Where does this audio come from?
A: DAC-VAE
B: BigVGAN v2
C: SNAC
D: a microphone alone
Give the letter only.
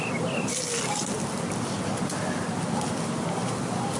D